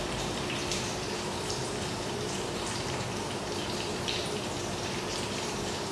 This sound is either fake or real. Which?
fake